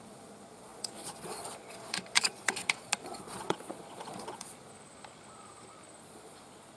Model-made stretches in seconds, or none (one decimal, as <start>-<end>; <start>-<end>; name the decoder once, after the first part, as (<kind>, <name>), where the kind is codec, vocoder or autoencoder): 0.0-4.7 (vocoder, Vocos); 6.0-6.8

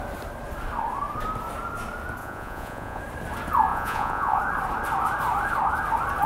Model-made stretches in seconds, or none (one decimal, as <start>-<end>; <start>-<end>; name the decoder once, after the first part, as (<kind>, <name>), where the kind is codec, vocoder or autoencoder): 2.2-3.0 (vocoder, Vocos); 3.7-4.4